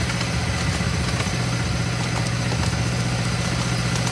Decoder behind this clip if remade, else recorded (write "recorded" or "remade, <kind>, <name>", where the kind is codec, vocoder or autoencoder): recorded